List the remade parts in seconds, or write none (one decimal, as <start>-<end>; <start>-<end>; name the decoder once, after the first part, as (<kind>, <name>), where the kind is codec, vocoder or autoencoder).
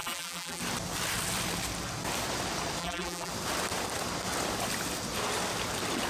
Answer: 0.0-0.6 (vocoder, BigVGAN v2); 2.8-3.3